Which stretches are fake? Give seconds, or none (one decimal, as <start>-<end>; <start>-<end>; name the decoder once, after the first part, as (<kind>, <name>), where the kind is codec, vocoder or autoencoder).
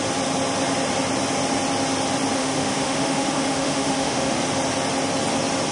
2.4-4.4 (autoencoder, DAC-VAE)